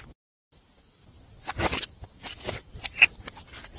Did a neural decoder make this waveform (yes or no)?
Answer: no